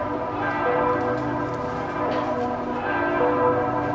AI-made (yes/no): yes